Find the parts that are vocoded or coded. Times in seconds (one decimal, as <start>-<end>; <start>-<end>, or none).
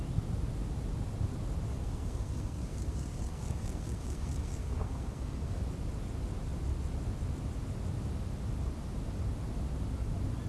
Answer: 1.7-5.6